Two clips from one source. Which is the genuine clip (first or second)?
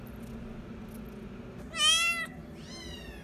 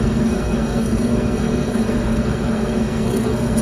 first